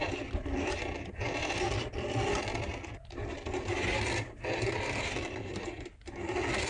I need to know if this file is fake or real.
real